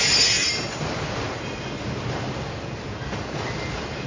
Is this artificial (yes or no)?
no